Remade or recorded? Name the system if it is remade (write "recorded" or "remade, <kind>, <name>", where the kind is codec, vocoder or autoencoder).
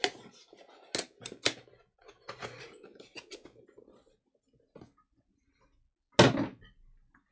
recorded